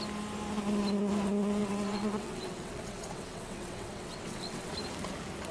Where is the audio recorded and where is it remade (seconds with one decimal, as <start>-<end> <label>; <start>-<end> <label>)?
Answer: 0.0-1.6 recorded; 1.6-4.7 remade; 4.7-5.5 recorded